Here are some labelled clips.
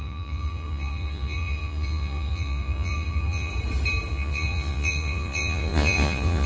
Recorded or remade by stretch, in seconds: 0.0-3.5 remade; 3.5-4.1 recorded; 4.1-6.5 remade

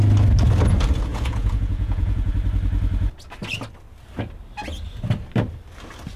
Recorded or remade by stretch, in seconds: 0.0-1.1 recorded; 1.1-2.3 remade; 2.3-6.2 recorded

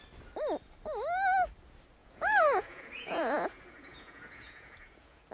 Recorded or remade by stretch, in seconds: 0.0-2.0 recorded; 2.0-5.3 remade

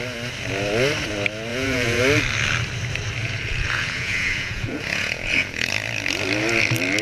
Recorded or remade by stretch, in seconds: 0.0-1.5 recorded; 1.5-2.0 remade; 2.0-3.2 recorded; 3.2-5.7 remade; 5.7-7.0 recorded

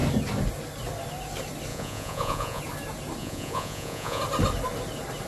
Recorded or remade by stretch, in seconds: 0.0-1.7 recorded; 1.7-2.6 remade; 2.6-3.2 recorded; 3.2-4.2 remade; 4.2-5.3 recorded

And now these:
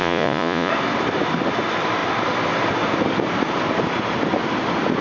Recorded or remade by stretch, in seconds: 0.0-0.7 remade; 0.7-5.0 recorded

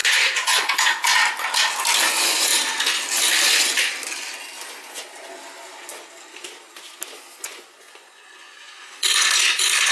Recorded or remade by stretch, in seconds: 0.0-1.2 remade; 1.2-2.1 recorded; 2.1-2.5 remade; 2.5-7.3 recorded; 7.3-9.9 remade